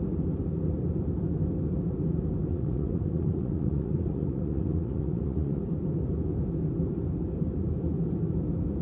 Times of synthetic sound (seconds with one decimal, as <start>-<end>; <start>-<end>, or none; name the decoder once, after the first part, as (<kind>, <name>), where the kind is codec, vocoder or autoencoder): 2.5-5.6 (vocoder, Vocos)